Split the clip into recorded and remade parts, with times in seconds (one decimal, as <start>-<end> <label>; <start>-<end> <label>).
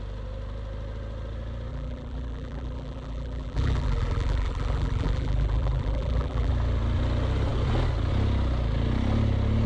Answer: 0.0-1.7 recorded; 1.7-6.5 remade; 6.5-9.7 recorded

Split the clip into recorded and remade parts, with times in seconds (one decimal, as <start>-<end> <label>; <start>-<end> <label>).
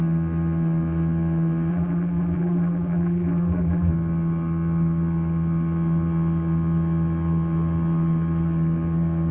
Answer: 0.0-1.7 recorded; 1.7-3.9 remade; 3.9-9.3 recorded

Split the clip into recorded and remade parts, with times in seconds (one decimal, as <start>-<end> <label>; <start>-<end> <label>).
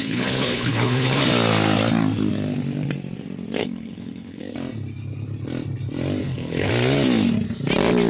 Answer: 0.0-1.2 remade; 1.2-3.6 recorded; 3.6-4.4 remade; 4.4-6.2 recorded; 6.2-6.7 remade; 6.7-8.1 recorded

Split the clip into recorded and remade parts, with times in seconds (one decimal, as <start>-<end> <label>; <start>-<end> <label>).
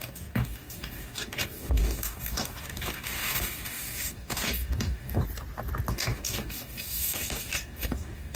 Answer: 0.0-5.2 remade; 5.2-5.9 recorded; 5.9-8.4 remade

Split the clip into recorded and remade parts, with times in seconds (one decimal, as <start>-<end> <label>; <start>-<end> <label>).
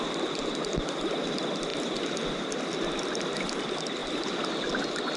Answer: 0.0-5.2 recorded